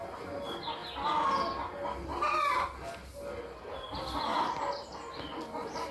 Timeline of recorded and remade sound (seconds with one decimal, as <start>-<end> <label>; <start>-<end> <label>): 0.0-5.9 recorded